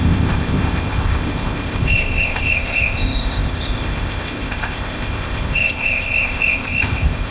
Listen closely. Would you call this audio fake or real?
fake